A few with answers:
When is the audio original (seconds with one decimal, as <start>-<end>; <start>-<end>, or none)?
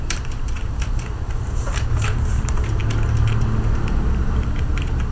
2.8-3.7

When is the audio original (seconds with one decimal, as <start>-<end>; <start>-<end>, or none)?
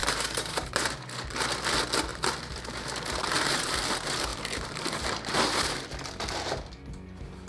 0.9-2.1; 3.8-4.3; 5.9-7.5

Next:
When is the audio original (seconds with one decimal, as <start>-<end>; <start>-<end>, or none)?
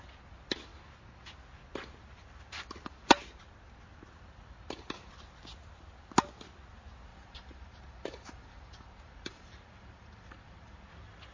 0.0-7.1; 10.9-11.3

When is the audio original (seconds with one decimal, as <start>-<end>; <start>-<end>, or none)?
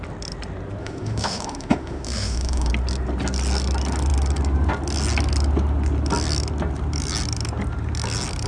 0.0-0.8; 2.7-8.5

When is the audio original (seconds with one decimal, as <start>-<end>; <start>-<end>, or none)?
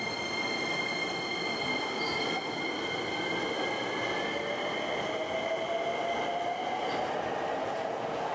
0.0-7.6